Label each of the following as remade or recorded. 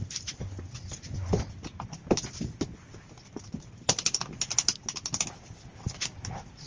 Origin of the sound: recorded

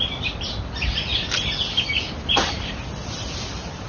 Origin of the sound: recorded